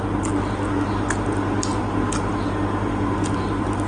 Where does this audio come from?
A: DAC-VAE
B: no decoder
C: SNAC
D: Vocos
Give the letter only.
B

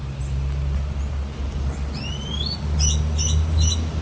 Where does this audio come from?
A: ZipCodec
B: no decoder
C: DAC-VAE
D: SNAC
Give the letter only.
B